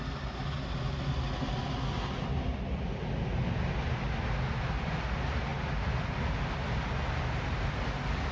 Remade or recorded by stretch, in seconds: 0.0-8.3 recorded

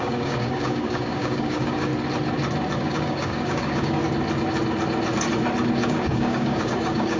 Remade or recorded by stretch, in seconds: 0.0-1.9 remade; 1.9-2.8 recorded; 2.8-4.0 remade; 4.0-5.7 recorded; 5.7-7.2 remade

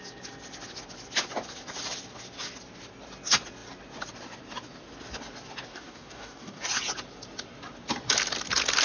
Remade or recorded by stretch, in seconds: 0.0-5.7 recorded; 5.7-6.6 remade; 6.6-8.8 recorded